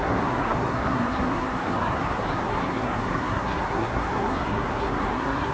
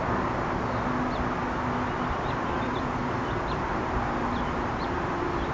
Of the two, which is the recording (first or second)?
second